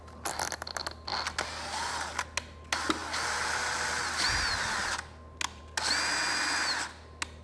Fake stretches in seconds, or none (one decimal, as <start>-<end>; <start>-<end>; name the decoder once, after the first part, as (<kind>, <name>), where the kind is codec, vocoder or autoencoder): none